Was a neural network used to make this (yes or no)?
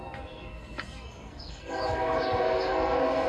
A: yes